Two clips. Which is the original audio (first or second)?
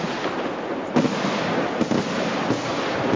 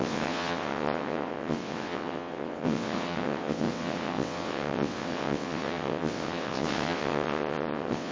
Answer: first